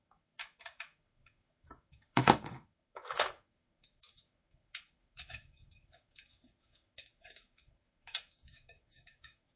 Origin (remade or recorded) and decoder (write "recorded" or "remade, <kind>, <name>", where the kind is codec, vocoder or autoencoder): remade, autoencoder, DAC-VAE